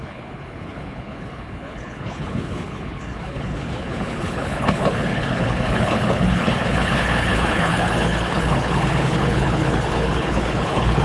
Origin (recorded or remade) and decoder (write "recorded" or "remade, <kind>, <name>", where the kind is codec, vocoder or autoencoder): remade, codec, HILCodec